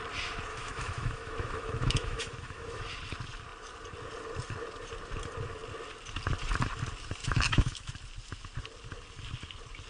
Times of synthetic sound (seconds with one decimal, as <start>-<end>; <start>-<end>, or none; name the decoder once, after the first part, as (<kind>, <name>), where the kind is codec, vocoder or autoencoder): 0.5-2.9 (autoencoder, DAC-VAE); 7.2-7.9